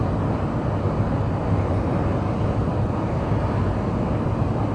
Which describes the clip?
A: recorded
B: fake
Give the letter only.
A